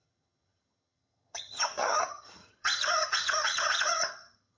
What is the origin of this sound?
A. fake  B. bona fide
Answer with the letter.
A